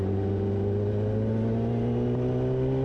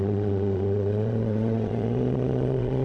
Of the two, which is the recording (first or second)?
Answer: first